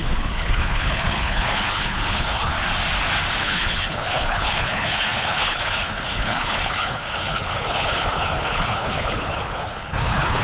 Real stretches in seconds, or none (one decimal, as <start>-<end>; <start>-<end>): 2.5-3.4